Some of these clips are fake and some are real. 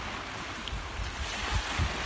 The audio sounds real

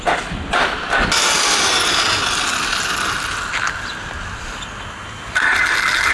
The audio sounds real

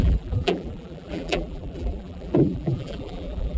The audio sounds fake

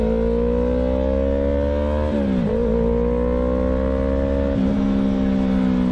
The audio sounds real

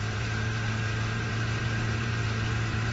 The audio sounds fake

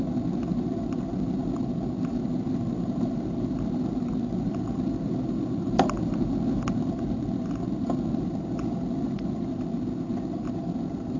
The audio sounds real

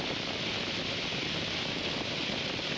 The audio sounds real